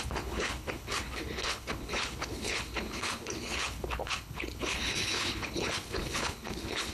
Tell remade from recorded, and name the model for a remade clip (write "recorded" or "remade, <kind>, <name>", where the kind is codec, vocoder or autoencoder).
remade, codec, HILCodec